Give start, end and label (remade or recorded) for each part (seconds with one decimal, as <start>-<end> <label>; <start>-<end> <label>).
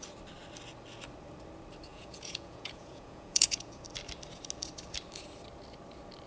0.0-1.9 recorded; 1.9-3.8 remade; 3.8-6.3 recorded